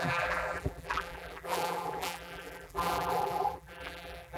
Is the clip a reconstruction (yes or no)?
yes